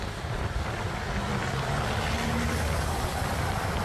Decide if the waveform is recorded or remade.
recorded